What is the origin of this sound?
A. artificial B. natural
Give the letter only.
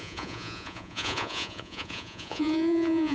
A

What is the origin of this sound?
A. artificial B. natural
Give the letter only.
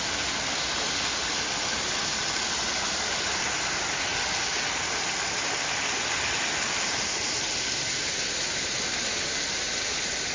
B